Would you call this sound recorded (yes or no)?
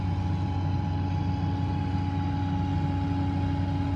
yes